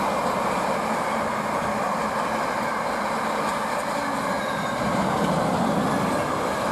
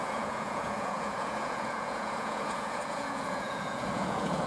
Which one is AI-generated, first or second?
second